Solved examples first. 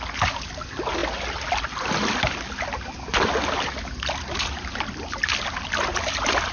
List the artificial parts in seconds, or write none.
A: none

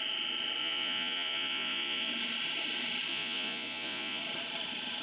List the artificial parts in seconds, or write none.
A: 0.6-2.1 (vocoder, Vocos); 3.1-4.2

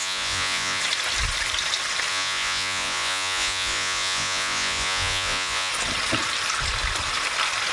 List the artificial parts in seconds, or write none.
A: 0.0-0.8 (vocoder, Vocos); 2.1-5.7

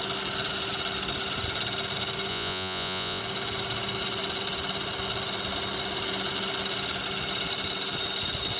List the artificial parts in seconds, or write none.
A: 2.3-3.2 (vocoder, Vocos)

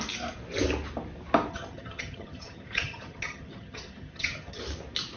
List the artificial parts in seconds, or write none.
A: 1.5-4.6 (vocoder, HiFi-GAN)